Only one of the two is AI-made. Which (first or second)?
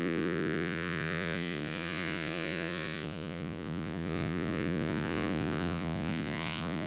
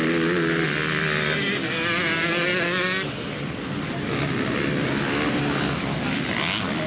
first